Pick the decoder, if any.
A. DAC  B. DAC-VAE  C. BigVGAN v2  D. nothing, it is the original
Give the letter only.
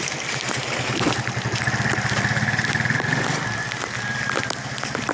D